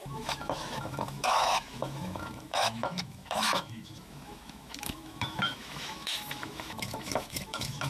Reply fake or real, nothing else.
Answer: fake